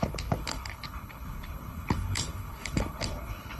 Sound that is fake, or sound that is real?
fake